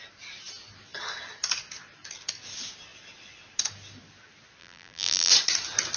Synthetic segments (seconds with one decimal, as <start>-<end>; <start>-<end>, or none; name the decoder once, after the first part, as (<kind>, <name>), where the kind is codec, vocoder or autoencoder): 4.6-5.3 (vocoder, BigVGAN v2)